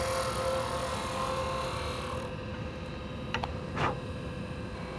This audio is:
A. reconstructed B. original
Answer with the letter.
B